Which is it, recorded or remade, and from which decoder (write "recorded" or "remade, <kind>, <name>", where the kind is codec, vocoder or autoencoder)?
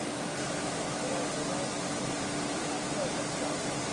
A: recorded